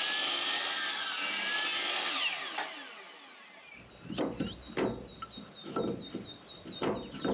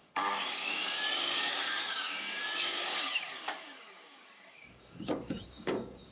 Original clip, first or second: first